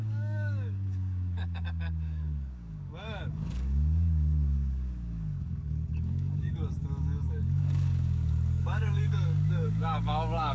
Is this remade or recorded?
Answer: remade